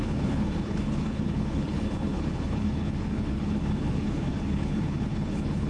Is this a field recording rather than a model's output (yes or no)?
no